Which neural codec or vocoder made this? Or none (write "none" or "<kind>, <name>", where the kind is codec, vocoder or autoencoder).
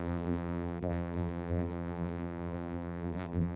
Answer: vocoder, BigVGAN v2